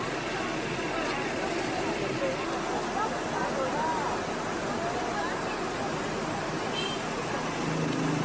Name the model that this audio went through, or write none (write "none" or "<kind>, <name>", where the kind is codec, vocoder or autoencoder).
none